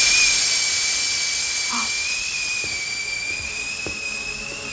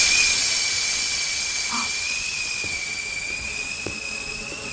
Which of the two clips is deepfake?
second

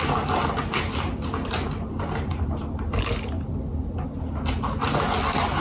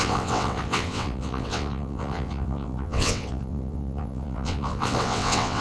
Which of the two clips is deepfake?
second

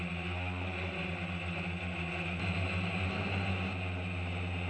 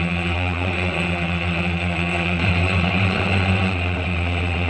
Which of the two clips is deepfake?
second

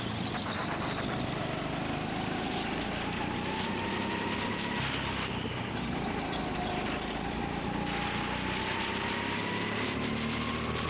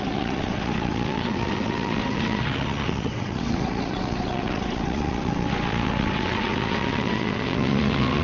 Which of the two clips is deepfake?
second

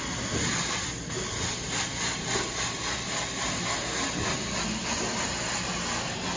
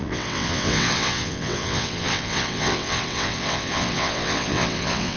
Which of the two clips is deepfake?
second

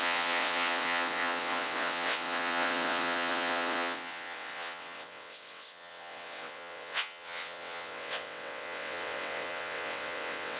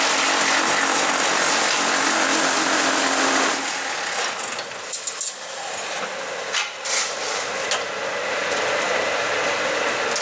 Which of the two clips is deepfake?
first